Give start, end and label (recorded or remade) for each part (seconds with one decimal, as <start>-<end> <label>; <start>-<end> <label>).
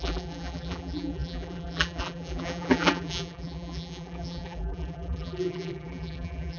0.0-6.6 remade